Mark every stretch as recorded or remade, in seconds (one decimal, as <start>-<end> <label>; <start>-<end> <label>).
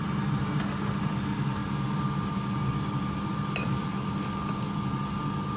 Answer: 0.0-1.6 recorded; 1.6-4.1 remade; 4.1-5.6 recorded